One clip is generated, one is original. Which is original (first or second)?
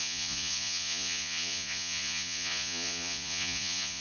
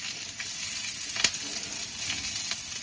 second